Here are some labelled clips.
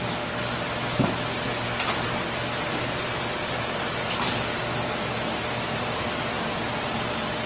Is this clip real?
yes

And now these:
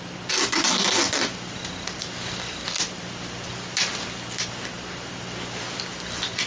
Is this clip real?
yes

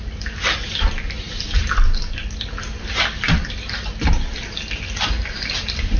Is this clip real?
yes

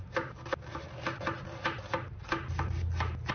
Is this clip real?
yes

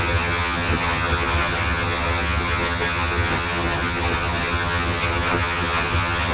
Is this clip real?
no